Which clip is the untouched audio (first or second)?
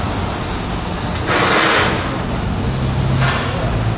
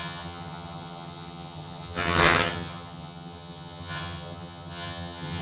first